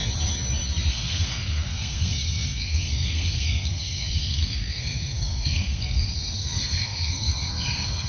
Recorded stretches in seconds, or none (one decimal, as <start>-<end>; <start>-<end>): 0.0-0.9